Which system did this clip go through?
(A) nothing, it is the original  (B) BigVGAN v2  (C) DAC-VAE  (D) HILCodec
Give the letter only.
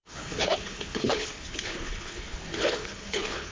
D